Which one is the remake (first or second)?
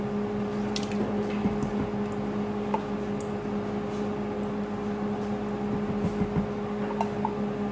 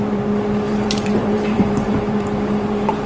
second